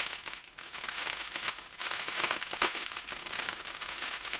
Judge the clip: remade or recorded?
remade